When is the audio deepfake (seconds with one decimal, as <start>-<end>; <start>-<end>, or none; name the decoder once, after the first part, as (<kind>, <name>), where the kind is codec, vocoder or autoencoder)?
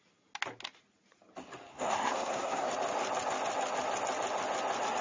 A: 1.7-2.7 (codec, SNAC)